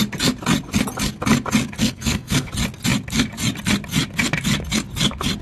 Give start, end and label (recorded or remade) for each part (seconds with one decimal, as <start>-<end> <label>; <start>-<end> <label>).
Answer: 0.0-1.8 recorded; 1.8-2.5 remade; 2.5-5.4 recorded